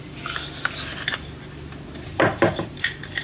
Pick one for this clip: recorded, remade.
remade